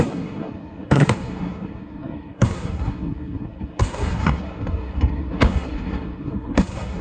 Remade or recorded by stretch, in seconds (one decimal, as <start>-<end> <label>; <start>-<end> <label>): 0.0-7.0 remade